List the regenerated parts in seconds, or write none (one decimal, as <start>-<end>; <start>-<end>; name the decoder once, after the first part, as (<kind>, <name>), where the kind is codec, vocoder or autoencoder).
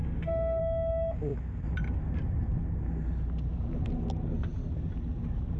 0.0-0.6 (autoencoder, DAC-VAE)